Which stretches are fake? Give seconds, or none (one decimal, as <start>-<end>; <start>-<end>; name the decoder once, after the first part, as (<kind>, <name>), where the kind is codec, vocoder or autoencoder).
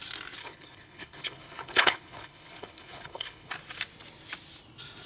0.4-3.5 (codec, HILCodec)